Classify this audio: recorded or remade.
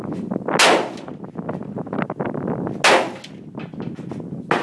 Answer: recorded